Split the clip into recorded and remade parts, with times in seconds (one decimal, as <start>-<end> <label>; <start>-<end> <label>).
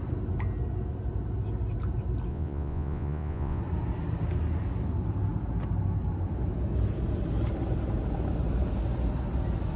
0.0-2.3 recorded; 2.3-3.6 remade; 3.6-9.8 recorded